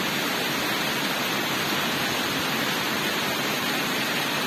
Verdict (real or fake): real